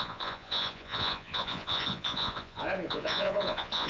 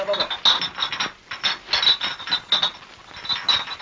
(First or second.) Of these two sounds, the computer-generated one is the first